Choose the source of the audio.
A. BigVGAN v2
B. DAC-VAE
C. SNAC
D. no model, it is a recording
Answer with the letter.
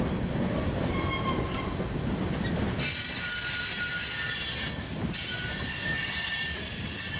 D